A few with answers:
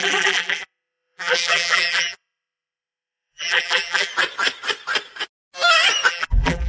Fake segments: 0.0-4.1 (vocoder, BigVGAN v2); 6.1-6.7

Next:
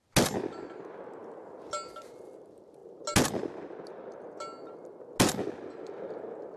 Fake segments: none

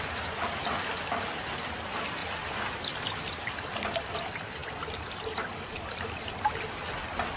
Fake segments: 0.0-2.2 (vocoder, BigVGAN v2); 3.3-7.4